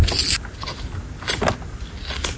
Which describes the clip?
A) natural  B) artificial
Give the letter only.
A